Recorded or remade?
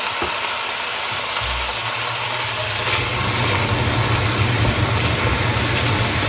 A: recorded